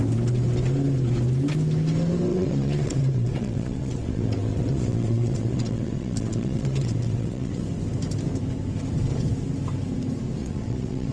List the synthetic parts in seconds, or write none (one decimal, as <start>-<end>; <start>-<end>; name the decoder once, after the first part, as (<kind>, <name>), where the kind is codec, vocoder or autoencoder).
2.3-7.6 (vocoder, WaveNeXt); 10.4-11.1

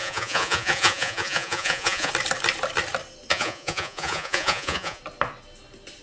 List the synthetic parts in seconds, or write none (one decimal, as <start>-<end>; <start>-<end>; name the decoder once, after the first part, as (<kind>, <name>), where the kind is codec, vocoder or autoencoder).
0.0-2.1 (vocoder, Vocos); 3.3-5.0